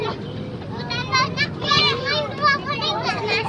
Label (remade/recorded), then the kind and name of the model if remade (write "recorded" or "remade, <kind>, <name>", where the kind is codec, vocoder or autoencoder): recorded